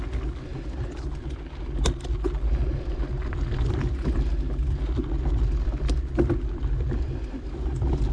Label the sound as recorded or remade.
recorded